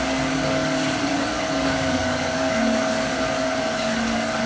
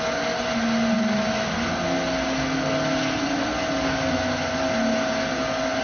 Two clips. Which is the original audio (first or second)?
second